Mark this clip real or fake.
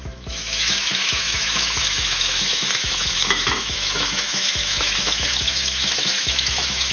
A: fake